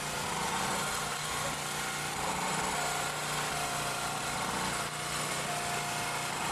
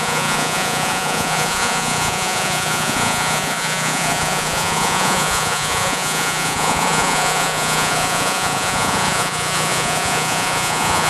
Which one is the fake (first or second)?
second